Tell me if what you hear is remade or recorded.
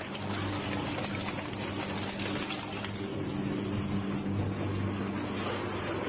recorded